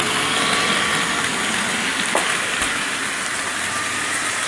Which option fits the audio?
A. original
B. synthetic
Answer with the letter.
A